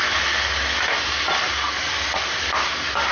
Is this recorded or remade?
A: recorded